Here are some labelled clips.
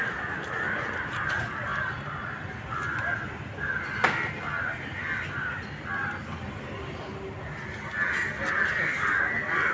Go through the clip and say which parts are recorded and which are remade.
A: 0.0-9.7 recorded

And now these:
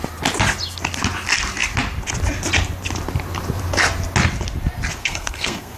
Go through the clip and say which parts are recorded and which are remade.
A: 0.0-5.0 recorded; 5.0-5.8 remade

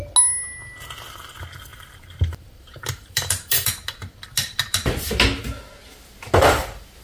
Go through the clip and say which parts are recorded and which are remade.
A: 0.0-1.7 recorded; 1.7-3.7 remade; 3.7-7.0 recorded

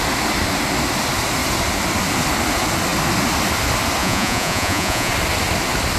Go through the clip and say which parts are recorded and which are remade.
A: 0.0-4.0 recorded; 4.0-5.1 remade; 5.1-6.0 recorded

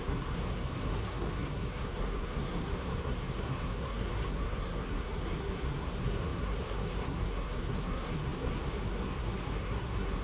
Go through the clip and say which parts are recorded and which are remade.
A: 0.0-10.2 remade